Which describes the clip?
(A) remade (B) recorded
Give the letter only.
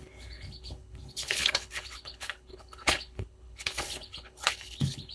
A